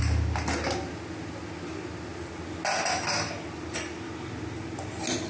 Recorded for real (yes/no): yes